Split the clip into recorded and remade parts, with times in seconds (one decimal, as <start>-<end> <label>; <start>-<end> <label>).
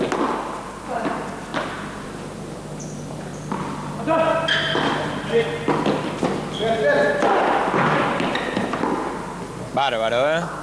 0.0-3.3 recorded; 3.3-8.5 remade; 8.5-10.6 recorded